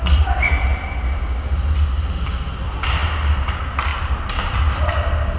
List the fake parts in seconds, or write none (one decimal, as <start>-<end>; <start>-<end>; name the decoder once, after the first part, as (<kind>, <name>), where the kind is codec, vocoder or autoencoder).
none